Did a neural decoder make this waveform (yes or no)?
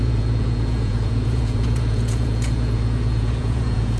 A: yes